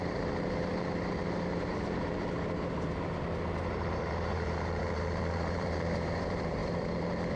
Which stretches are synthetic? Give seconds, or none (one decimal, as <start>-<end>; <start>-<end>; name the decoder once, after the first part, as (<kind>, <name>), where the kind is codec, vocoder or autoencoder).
0.0-7.4 (vocoder, BigVGAN v2)